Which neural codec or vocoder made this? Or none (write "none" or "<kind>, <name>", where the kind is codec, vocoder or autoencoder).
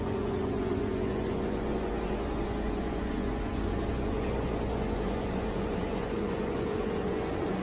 vocoder, Vocos